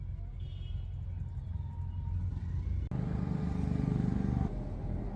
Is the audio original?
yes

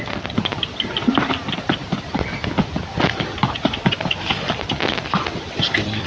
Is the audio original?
no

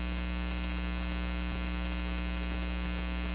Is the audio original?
yes